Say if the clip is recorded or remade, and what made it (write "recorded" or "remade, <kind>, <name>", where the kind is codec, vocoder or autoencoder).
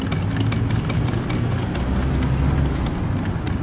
recorded